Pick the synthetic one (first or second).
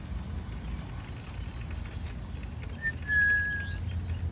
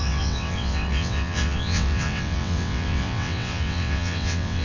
second